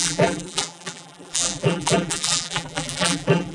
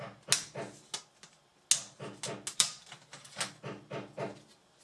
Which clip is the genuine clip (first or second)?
second